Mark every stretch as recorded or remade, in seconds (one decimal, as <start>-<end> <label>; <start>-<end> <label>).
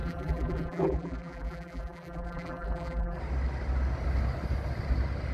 0.0-3.2 remade; 3.2-5.3 recorded